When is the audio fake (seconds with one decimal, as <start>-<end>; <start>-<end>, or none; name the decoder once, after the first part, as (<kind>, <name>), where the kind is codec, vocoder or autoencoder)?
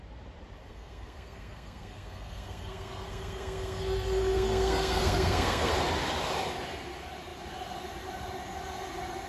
0.7-5.7 (codec, SNAC)